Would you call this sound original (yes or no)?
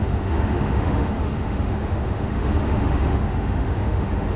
no